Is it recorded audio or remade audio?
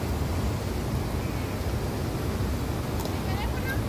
recorded